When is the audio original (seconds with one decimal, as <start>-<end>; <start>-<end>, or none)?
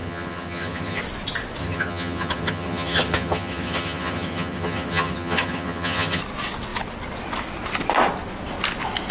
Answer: 1.0-1.6; 6.2-9.1